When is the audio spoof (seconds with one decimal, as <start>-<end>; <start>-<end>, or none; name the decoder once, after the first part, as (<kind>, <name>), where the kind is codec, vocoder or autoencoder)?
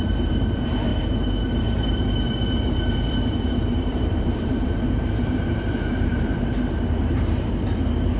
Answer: 0.0-8.2 (vocoder, BigVGAN v2)